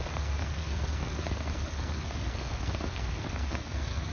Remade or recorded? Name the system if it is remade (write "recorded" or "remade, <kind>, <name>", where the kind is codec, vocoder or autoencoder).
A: remade, codec, SNAC